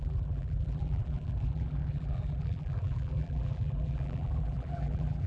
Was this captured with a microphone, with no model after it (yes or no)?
no